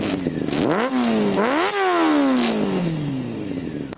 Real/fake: real